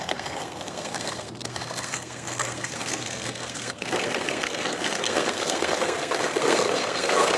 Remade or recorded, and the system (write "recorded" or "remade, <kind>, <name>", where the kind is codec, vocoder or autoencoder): remade, codec, SNAC